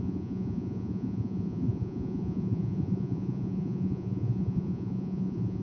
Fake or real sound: fake